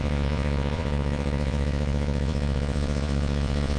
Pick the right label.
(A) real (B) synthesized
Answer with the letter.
B